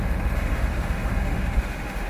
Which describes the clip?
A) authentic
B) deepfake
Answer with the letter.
B